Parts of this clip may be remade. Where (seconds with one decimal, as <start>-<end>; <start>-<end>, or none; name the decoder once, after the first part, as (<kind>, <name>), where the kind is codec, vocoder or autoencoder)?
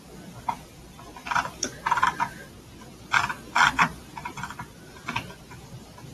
1.2-2.7 (vocoder, BigVGAN v2); 3.9-6.1